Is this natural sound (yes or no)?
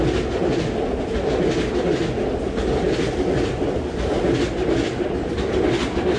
yes